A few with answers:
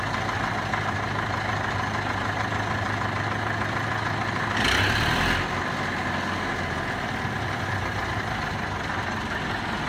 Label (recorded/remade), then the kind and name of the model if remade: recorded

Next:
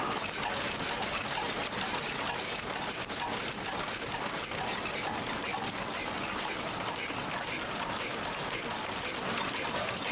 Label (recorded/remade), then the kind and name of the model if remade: recorded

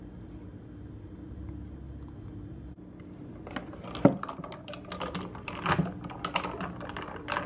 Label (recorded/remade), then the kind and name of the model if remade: recorded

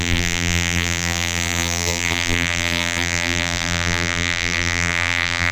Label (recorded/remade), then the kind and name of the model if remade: remade, vocoder, BigVGAN v2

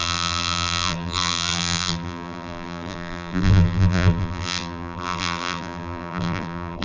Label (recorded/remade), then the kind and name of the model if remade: remade, vocoder, BigVGAN v2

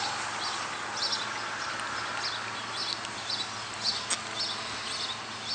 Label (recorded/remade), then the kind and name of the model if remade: recorded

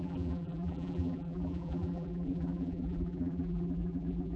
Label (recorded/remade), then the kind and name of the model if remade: remade, vocoder, BigVGAN v2